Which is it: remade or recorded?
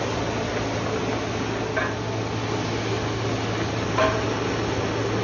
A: recorded